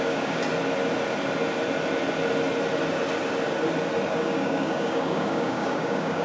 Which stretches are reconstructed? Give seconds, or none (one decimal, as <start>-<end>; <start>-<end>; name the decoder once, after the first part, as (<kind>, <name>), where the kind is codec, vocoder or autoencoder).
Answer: 0.0-0.4 (codec, DAC); 4.1-6.2